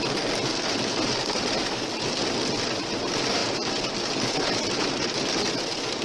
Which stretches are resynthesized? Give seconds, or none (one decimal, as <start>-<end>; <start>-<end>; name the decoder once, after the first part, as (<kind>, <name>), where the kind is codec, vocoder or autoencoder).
none